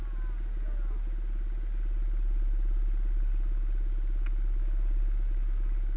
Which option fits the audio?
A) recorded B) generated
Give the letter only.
A